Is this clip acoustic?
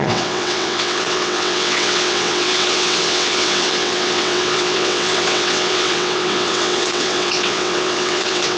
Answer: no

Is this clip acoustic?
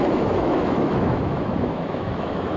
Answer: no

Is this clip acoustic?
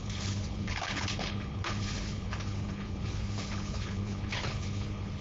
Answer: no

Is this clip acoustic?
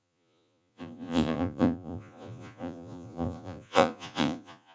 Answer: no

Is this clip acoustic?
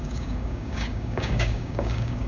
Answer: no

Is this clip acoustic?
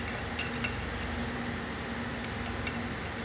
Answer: yes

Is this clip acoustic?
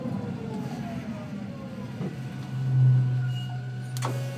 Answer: yes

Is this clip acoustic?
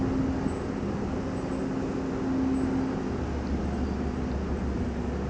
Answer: yes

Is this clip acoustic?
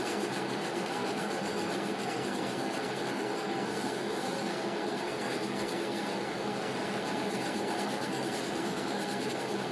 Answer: no